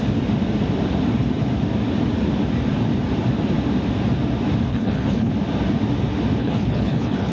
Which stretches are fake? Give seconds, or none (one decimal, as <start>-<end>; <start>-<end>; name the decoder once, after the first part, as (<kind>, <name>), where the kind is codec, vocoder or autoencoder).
4.7-5.3 (codec, HILCodec); 6.4-7.3